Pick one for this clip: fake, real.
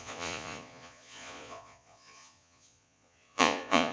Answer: fake